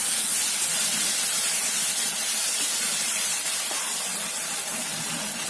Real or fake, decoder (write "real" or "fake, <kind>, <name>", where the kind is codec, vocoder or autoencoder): real